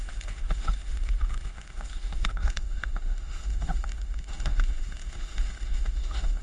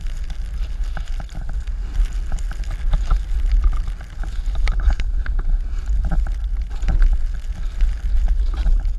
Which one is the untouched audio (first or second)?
second